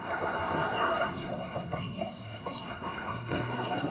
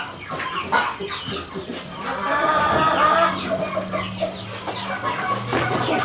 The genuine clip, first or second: second